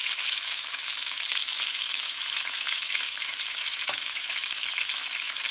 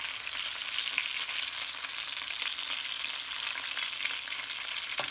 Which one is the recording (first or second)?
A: second